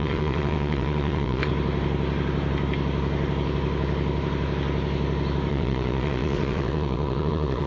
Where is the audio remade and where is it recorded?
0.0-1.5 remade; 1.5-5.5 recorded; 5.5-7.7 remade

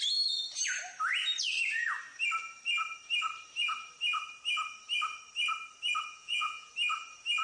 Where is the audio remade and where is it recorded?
0.0-6.1 recorded; 6.1-6.7 remade; 6.7-7.4 recorded

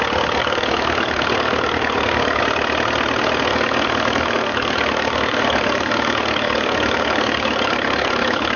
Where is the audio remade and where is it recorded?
0.0-0.4 recorded; 0.4-2.4 remade; 2.4-3.5 recorded; 3.5-8.6 remade

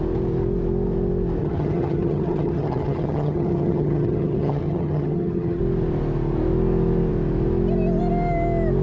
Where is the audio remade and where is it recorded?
0.0-1.4 recorded; 1.4-5.6 remade; 5.6-8.8 recorded

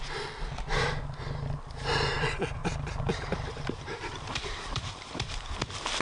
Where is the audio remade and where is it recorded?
0.0-2.6 recorded; 2.6-5.6 remade; 5.6-6.0 recorded

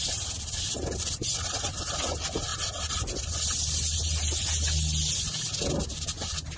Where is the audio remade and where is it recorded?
0.0-6.6 recorded

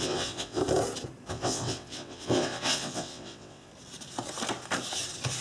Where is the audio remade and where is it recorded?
0.0-0.6 remade; 0.6-1.3 recorded; 1.3-3.7 remade; 3.7-5.4 recorded

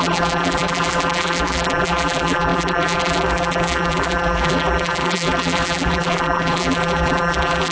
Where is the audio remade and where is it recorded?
0.0-7.7 remade